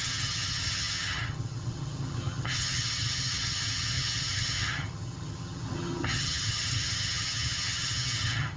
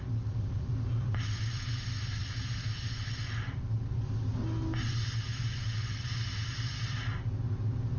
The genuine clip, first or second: second